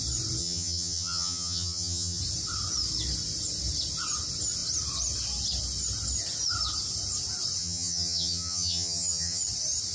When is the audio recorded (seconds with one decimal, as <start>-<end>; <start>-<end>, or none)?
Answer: 0.0-0.4; 2.2-7.6; 9.4-9.9